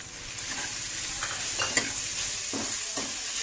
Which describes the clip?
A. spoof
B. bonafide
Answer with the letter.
B